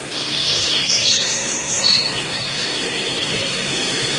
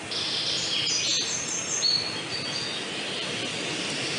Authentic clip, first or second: second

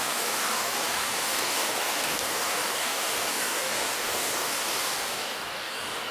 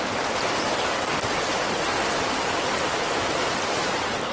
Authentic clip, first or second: second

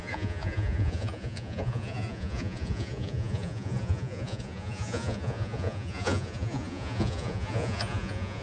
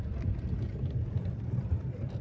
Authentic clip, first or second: second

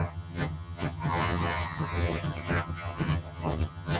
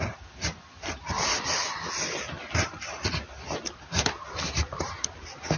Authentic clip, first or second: second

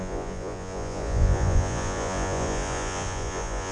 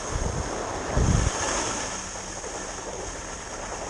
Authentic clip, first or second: second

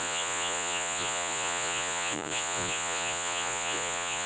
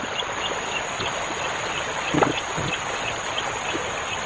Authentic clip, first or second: second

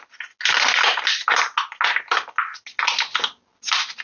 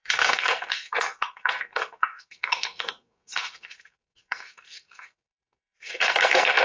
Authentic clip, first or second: first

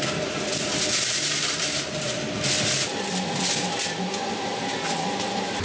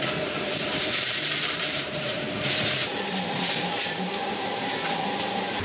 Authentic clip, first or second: first